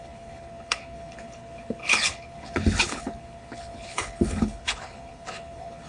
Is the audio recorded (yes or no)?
no